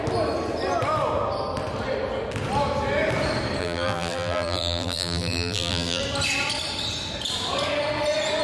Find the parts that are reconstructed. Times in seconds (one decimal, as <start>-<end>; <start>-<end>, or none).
3.6-6.0